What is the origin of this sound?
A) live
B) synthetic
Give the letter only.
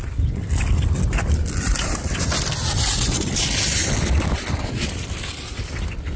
A